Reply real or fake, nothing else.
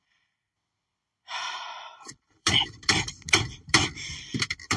fake